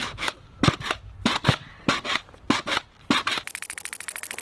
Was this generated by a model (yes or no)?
no